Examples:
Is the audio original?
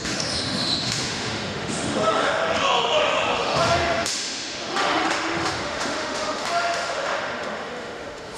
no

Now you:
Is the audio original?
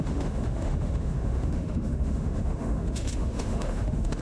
no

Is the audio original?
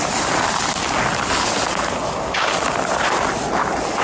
yes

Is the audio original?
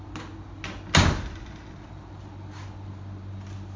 yes